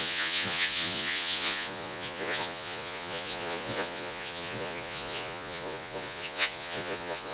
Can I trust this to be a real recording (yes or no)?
no